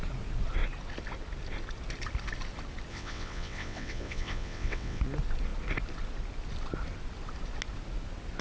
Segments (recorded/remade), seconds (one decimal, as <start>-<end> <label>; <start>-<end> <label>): 0.0-2.9 recorded; 2.9-5.0 remade; 5.0-8.4 recorded